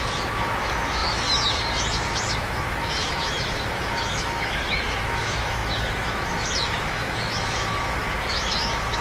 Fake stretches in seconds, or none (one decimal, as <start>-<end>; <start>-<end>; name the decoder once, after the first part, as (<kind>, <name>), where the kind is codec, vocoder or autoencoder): 0.0-9.0 (autoencoder, DAC-VAE)